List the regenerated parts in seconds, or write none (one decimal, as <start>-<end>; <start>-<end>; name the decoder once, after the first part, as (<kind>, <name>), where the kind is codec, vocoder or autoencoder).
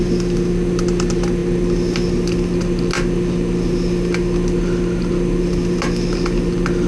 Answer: none